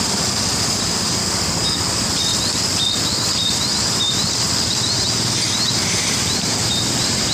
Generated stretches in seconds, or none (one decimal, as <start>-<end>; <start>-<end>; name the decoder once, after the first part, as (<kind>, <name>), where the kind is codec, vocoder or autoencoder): 1.2-1.8 (codec, DAC)